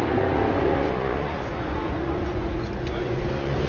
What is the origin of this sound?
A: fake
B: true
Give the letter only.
A